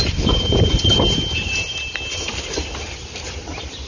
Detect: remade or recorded recorded